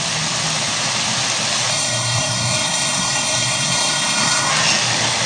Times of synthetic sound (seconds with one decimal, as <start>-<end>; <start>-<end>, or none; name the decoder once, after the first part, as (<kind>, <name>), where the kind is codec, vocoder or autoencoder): 1.7-4.5 (codec, SNAC)